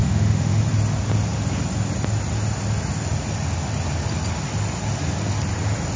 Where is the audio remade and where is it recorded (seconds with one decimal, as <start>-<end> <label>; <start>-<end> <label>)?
0.0-0.6 remade; 0.6-6.0 recorded